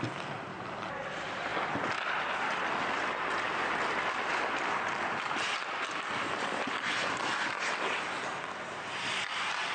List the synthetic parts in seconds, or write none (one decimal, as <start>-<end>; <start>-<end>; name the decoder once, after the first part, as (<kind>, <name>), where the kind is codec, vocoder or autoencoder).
none

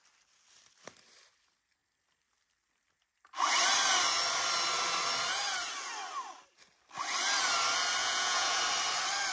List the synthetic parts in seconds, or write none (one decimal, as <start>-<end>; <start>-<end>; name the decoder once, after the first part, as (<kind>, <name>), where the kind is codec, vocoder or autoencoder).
8.0-8.6 (vocoder, Vocos)

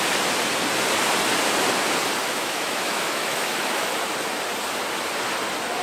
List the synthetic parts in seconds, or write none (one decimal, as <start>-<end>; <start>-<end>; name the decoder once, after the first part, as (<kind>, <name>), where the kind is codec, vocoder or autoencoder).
2.2-3.9 (autoencoder, DAC-VAE)

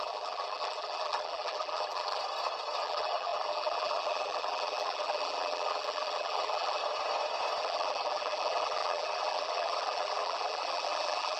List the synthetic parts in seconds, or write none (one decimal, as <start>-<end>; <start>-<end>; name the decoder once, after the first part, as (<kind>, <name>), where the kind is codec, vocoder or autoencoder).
0.0-2.2 (vocoder, BigVGAN v2); 2.8-6.8; 7.6-11.4